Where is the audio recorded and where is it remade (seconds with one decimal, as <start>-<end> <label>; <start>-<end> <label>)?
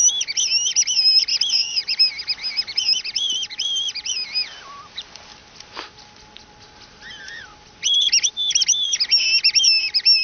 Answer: 0.0-10.2 recorded